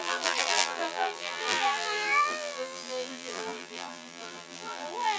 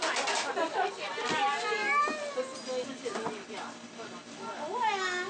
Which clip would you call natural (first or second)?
second